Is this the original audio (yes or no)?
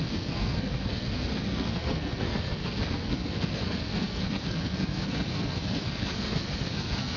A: no